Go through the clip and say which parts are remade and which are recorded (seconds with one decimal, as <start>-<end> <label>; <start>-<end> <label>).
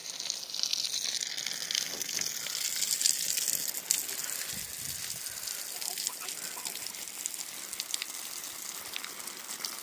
0.0-9.8 recorded